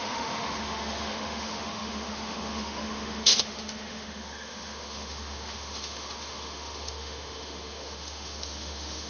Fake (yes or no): yes